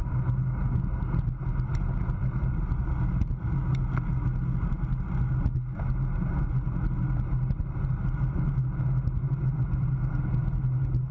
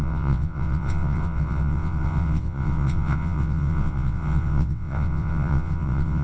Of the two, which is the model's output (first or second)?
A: second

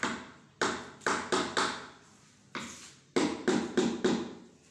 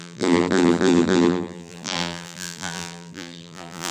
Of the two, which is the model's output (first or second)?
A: second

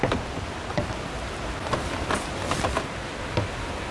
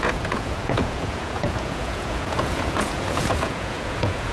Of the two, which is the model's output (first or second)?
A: second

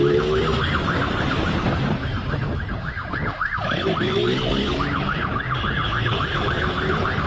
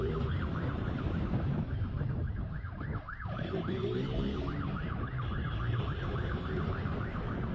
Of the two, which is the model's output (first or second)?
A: second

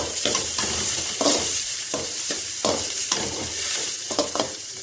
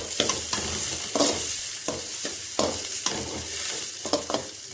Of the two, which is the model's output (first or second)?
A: first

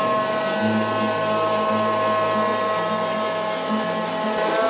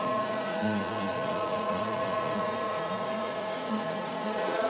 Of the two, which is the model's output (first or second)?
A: second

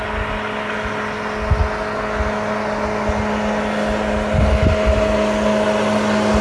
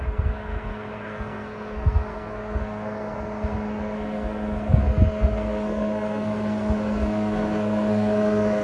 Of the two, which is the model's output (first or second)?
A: second